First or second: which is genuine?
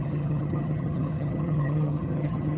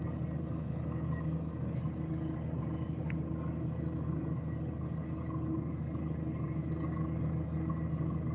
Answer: second